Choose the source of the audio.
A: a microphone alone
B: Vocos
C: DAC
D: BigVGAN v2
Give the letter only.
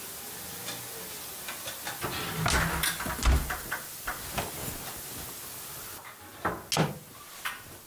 A